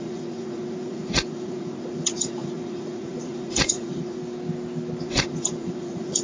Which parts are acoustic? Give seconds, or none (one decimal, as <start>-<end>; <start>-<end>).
4.2-5.0